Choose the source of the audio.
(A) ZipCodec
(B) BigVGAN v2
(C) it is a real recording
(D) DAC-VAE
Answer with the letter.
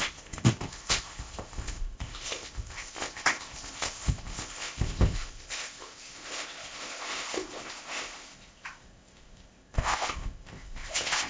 A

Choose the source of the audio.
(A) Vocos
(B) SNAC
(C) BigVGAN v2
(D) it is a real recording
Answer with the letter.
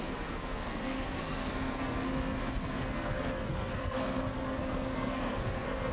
B